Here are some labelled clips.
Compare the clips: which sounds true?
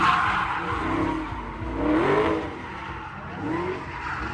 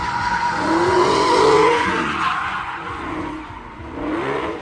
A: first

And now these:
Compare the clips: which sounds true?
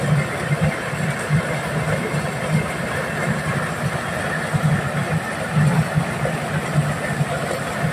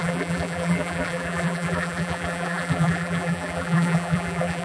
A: first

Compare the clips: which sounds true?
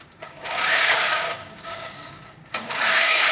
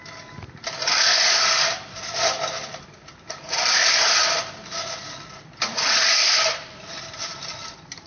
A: second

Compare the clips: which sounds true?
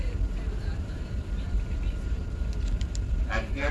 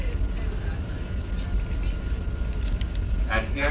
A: second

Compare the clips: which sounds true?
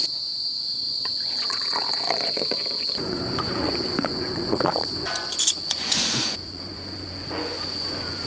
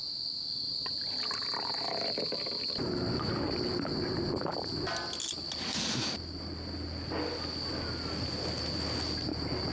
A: second